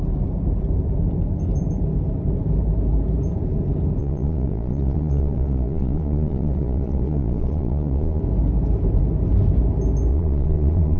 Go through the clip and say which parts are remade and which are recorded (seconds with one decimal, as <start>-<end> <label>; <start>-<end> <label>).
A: 0.0-4.0 recorded; 4.0-8.2 remade; 8.2-10.1 recorded; 10.1-11.0 remade